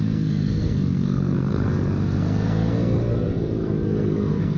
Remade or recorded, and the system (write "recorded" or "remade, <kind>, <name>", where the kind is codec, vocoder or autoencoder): remade, codec, SNAC